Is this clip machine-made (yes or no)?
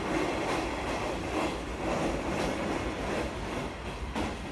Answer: no